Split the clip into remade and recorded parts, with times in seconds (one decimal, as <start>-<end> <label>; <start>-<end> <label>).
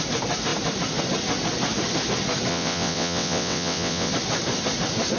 0.0-2.5 recorded; 2.5-4.1 remade; 4.1-5.2 recorded